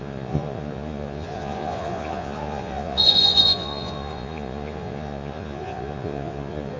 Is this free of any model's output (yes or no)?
no